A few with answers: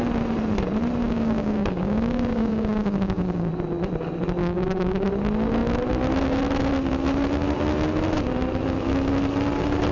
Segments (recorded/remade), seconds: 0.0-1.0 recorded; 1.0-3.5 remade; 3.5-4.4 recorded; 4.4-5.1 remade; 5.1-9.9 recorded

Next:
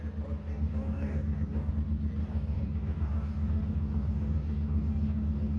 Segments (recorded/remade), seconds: 0.0-0.4 recorded; 0.4-1.7 remade; 1.7-2.2 recorded; 2.2-5.6 remade